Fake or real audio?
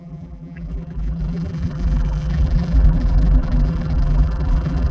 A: fake